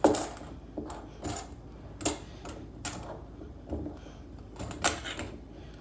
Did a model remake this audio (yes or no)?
no